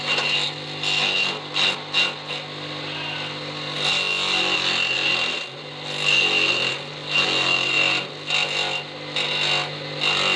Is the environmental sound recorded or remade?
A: recorded